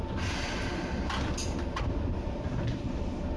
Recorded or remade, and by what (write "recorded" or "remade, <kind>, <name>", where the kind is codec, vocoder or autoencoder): recorded